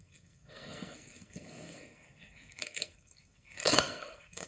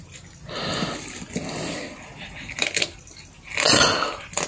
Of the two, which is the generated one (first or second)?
first